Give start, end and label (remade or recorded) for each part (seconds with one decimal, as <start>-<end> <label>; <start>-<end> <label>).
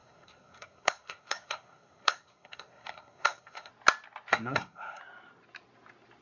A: 0.0-3.7 remade; 3.7-4.3 recorded; 4.3-5.0 remade; 5.0-6.2 recorded